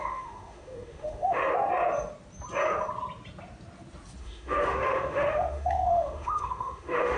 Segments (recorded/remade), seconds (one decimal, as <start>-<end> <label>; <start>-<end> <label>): 0.0-1.4 remade; 1.4-4.2 recorded; 4.2-7.2 remade